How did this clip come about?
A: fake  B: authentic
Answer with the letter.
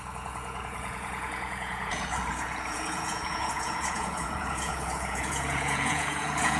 A